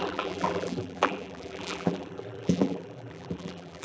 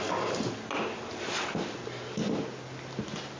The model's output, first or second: first